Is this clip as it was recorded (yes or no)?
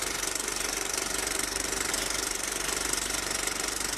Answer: no